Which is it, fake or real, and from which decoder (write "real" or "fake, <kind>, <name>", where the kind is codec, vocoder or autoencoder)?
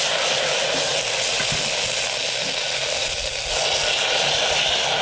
real